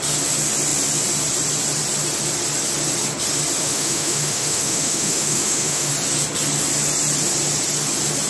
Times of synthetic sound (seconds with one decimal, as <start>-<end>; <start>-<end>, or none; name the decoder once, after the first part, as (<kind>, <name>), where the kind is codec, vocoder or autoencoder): 3.6-5.9 (autoencoder, DAC-VAE)